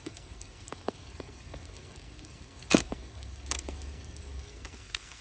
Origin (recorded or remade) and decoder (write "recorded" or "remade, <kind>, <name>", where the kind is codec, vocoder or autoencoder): remade, codec, SNAC